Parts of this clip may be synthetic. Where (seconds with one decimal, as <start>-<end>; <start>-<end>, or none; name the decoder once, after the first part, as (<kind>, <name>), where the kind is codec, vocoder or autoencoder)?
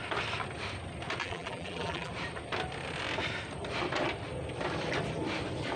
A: 1.2-2.1 (vocoder, BigVGAN v2)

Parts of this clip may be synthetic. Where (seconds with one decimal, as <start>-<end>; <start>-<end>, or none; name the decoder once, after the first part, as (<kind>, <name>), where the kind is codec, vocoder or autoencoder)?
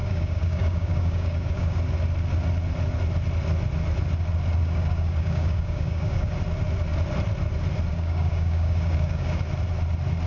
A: 0.0-1.8 (codec, DAC); 4.6-6.3; 7.9-9.4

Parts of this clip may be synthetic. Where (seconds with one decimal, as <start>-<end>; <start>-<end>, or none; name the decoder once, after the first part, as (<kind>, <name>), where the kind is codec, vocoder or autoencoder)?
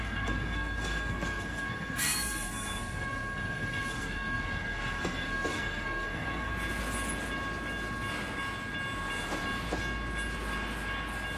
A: 0.0-6.5 (codec, SNAC)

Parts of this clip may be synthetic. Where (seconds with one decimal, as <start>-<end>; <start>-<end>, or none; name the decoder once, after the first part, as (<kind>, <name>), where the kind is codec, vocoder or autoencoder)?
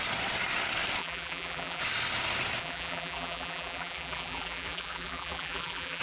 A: 1.0-1.8 (vocoder, BigVGAN v2); 2.6-6.0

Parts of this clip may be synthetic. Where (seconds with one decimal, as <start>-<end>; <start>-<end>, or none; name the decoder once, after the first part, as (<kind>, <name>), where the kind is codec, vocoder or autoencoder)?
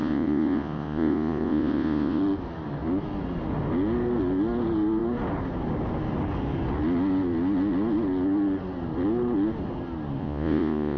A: 0.0-2.2 (vocoder, Vocos); 10.2-11.0